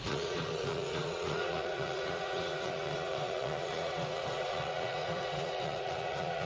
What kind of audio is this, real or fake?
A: fake